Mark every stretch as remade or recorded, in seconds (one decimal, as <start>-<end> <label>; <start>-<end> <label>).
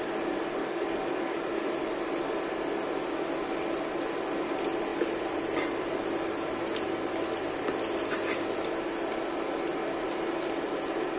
0.0-0.6 recorded; 0.6-1.4 remade; 1.4-11.2 recorded